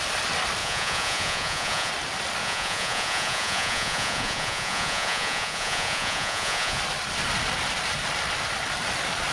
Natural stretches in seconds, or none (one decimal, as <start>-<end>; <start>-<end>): 0.0-0.6; 1.9-2.4; 6.8-9.3